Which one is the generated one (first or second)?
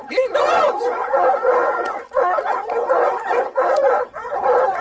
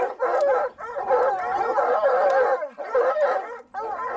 first